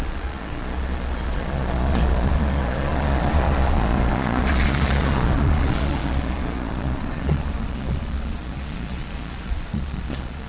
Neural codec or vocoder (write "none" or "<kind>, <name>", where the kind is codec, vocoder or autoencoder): vocoder, Vocos